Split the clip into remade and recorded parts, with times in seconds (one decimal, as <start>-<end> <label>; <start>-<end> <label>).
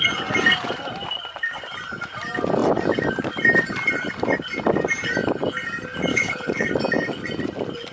0.0-6.1 recorded; 6.1-6.7 remade; 6.7-7.9 recorded